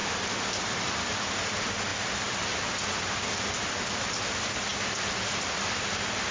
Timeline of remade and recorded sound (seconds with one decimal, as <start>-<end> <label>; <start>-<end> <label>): 0.0-1.3 remade; 1.3-1.9 recorded; 1.9-4.2 remade; 4.2-4.7 recorded; 4.7-5.6 remade; 5.6-6.3 recorded